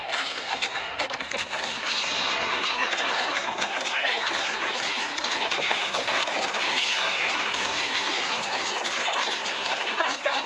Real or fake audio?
fake